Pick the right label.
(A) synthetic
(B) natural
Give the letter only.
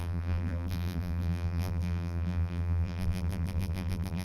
A